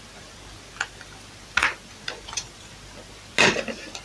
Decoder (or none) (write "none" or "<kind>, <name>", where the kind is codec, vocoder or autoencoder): none